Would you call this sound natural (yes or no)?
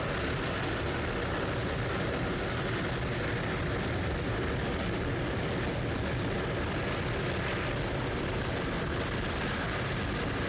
yes